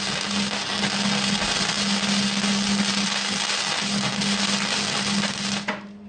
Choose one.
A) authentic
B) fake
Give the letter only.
A